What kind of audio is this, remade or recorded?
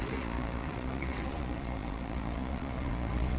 remade